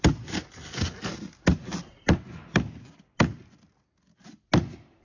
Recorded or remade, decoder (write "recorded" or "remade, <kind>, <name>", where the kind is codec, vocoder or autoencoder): recorded